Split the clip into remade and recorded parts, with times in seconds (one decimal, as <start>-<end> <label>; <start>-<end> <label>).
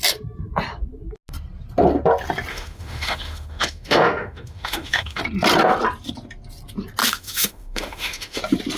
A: 0.0-2.5 recorded; 2.5-5.2 remade; 5.2-7.0 recorded; 7.0-8.4 remade; 8.4-8.8 recorded